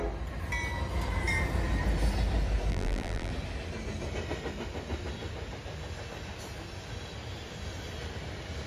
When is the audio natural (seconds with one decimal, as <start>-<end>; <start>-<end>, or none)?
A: 0.0-2.7; 3.3-8.7